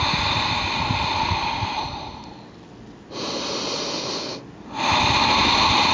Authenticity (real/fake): real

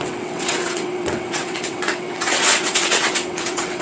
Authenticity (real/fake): fake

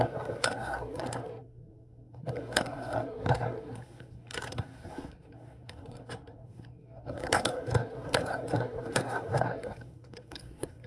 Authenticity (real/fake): fake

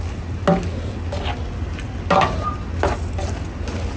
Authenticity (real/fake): real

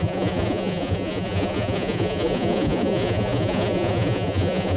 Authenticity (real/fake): fake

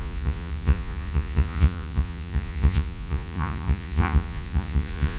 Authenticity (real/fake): fake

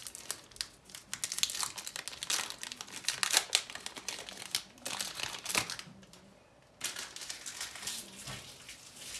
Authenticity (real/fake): real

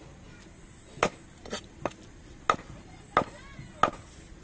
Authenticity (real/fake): real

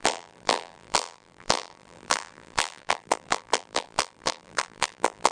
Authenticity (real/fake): fake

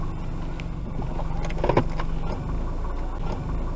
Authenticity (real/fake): real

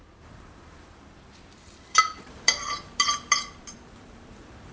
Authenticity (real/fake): fake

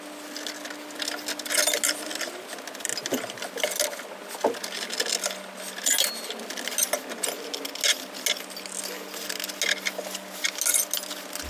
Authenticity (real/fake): real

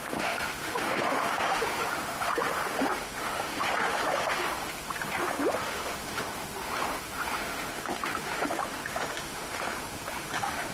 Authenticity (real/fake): fake